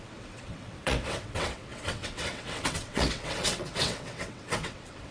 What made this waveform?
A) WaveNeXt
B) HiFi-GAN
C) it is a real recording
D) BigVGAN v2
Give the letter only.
A